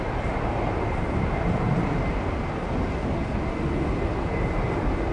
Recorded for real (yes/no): yes